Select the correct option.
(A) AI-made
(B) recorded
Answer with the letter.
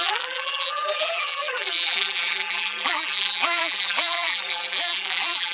A